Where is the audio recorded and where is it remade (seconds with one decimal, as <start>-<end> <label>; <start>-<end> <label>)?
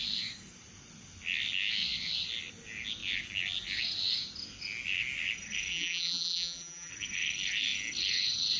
0.0-5.7 recorded; 5.7-6.9 remade; 6.9-8.6 recorded